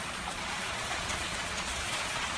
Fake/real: fake